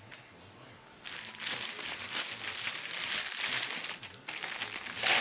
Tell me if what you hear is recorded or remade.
recorded